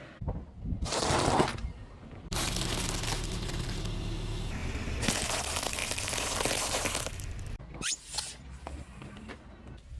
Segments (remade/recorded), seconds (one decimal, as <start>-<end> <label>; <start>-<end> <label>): 0.0-1.6 recorded; 1.6-3.7 remade; 3.7-5.8 recorded; 5.8-10.0 remade